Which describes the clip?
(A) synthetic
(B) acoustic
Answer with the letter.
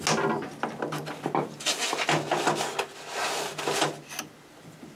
B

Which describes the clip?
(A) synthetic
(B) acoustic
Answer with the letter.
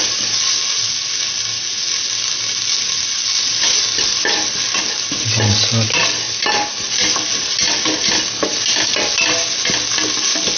B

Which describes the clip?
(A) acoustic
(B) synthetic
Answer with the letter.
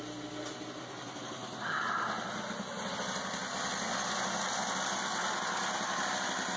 A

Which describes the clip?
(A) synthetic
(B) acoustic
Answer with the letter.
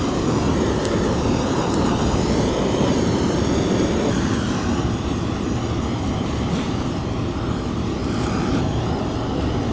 B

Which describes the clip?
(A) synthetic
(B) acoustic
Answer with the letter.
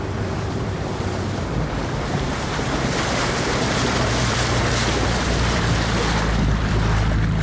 A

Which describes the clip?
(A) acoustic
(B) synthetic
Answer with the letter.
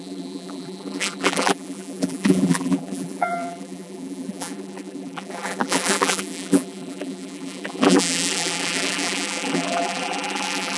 B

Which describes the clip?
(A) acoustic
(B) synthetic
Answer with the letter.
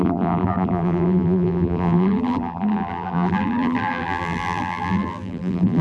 B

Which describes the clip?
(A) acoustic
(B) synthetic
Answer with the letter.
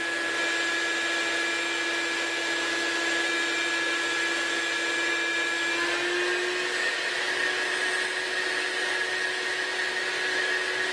A